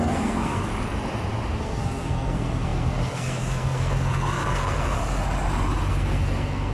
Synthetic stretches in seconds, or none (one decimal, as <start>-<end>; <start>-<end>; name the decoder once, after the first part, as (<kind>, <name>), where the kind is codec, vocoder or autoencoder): 0.0-0.7 (codec, SNAC); 1.6-5.0; 5.9-6.7

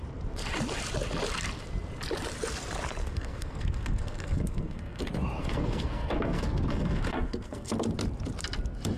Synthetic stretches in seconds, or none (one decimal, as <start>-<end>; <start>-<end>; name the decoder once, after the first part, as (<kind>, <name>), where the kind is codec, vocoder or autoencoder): 3.0-5.0 (codec, SNAC); 5.4-7.7

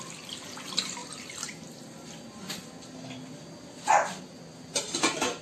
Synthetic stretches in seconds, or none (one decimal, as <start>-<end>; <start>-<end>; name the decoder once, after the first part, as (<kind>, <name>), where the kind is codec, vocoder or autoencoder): none

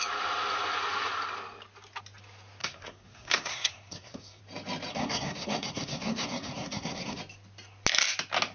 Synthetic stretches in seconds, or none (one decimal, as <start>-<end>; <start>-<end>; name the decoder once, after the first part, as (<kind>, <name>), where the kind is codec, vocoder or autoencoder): 2.6-4.4 (codec, SNAC); 4.9-7.2

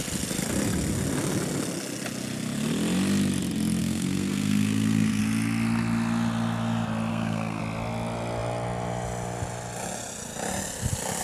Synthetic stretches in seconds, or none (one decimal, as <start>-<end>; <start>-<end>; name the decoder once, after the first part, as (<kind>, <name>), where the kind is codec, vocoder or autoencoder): 3.8-5.2 (codec, SNAC); 7.1-7.6

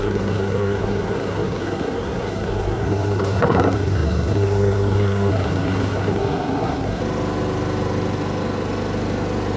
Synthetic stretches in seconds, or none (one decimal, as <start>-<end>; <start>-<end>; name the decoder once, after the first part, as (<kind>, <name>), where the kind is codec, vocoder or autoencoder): 0.0-7.0 (codec, SNAC)

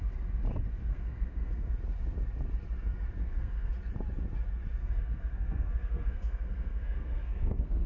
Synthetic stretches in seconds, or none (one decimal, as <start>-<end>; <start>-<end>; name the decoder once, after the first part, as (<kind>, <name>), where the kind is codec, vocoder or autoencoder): 0.9-1.7 (codec, SNAC); 3.2-3.7; 4.8-7.9

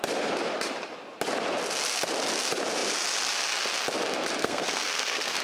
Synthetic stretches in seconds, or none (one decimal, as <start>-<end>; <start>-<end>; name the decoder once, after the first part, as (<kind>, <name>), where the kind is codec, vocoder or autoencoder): 4.4-5.4 (codec, SNAC)